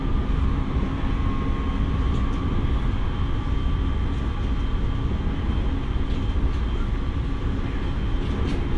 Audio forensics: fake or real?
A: real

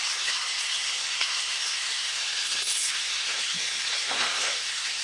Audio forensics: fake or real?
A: fake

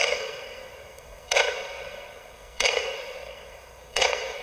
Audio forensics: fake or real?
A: fake